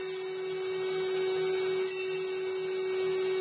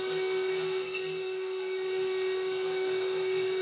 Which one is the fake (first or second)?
second